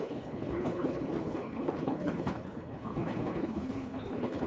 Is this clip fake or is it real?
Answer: fake